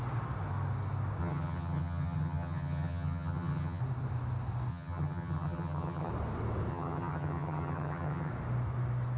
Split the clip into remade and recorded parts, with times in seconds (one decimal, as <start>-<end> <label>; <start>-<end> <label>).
0.0-1.2 recorded; 1.2-3.8 remade; 3.8-4.7 recorded; 4.7-6.1 remade; 6.1-6.7 recorded; 6.7-8.3 remade; 8.3-9.2 recorded

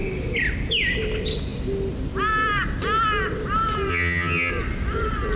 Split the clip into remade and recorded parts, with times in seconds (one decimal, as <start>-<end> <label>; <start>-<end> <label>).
0.0-3.9 recorded; 3.9-4.5 remade; 4.5-5.4 recorded